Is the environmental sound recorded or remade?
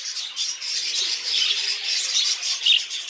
recorded